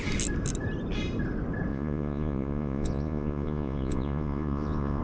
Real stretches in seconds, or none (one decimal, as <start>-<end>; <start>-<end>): 0.0-1.7